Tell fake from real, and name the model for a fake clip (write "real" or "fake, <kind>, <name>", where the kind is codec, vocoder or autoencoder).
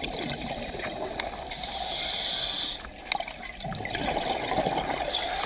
real